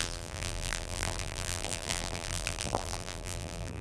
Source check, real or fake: fake